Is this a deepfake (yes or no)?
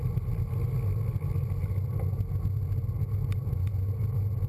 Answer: no